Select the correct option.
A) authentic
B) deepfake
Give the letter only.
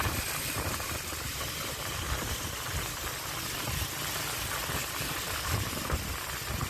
B